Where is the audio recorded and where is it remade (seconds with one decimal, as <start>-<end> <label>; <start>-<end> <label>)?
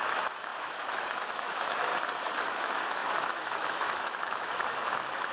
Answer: 0.0-1.9 remade; 1.9-2.5 recorded; 2.5-5.3 remade